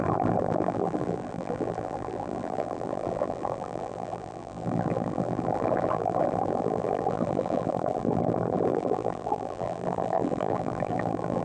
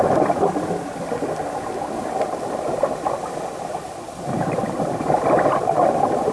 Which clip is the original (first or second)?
second